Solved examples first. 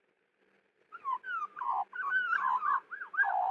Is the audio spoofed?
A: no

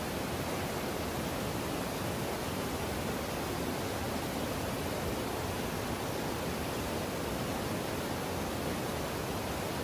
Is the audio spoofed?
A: no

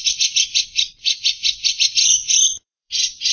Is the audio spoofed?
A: yes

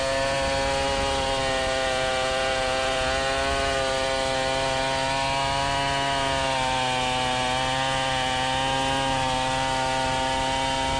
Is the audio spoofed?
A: no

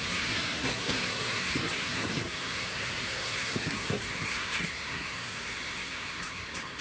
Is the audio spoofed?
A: yes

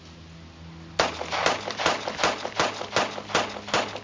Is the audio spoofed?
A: no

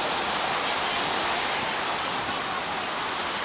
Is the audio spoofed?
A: no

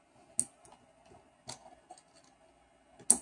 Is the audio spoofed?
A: no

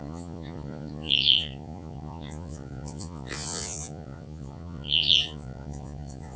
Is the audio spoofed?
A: yes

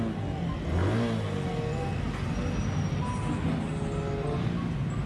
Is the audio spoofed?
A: no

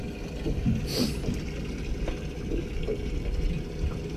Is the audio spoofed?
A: no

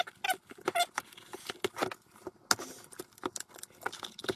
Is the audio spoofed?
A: no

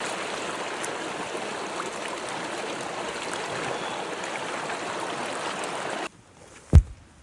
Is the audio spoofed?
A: no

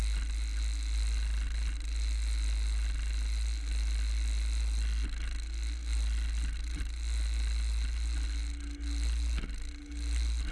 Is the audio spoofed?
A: no